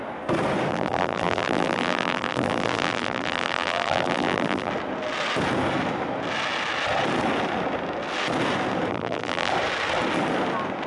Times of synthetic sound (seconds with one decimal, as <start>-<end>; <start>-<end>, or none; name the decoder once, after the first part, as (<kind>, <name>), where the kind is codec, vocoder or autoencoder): 0.7-4.7 (vocoder, BigVGAN v2); 8.9-9.5